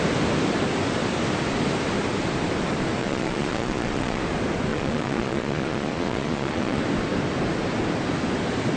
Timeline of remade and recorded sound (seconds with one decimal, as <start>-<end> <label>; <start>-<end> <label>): 0.0-3.0 recorded; 3.0-4.2 remade; 4.2-4.7 recorded; 4.7-6.8 remade; 6.8-8.8 recorded